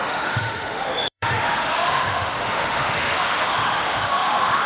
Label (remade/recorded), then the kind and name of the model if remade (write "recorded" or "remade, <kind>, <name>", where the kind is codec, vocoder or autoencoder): remade, autoencoder, DAC-VAE